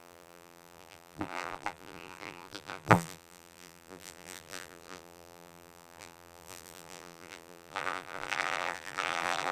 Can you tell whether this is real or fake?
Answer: fake